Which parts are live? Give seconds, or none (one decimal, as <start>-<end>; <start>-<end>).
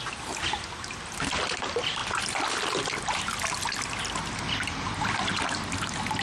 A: 0.0-6.2